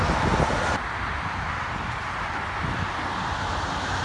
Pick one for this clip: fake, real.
real